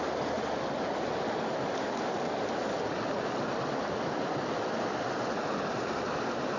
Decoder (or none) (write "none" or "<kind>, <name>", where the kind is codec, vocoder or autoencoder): none